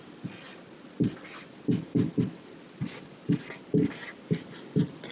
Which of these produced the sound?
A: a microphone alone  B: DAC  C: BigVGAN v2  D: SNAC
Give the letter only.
A